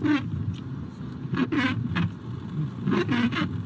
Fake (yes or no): no